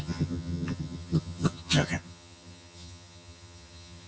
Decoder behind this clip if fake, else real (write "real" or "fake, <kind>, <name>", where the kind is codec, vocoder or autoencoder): fake, vocoder, HiFi-GAN